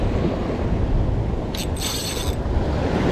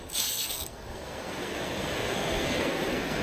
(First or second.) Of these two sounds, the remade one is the second